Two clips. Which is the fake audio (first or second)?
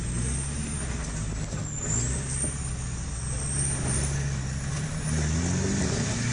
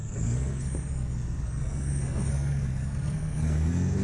second